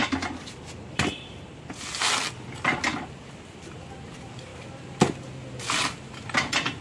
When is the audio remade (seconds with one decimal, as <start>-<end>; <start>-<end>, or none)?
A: none

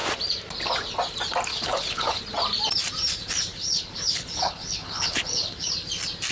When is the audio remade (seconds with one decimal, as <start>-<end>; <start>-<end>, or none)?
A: 1.5-2.2; 3.5-5.7

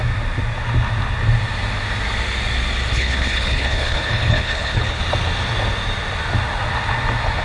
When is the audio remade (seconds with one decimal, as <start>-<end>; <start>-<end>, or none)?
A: 2.9-5.0

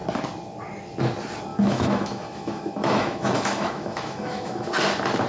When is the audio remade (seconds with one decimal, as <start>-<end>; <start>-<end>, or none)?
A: 1.5-4.7